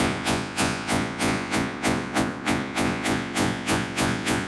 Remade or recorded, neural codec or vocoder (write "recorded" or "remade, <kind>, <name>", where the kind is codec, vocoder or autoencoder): remade, vocoder, Vocos